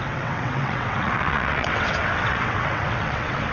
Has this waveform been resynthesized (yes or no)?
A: yes